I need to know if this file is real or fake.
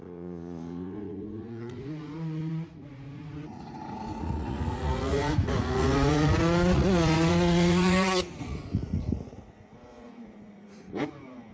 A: fake